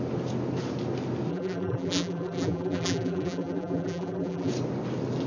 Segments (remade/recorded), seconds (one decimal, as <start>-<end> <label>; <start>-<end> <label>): 0.0-1.3 recorded; 1.3-4.5 remade; 4.5-5.3 recorded